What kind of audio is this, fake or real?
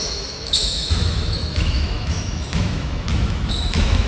fake